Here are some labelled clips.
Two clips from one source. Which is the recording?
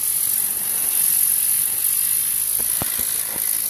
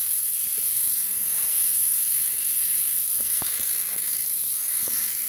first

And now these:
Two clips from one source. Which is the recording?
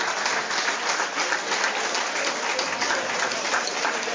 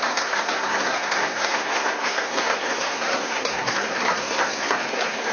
first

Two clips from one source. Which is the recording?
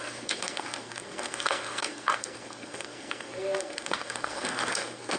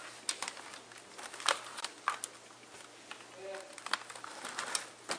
second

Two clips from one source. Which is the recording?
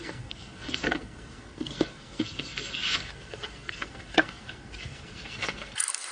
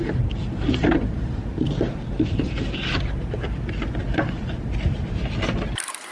second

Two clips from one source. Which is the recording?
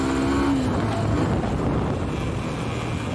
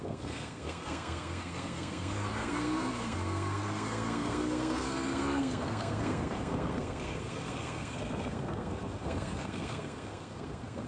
first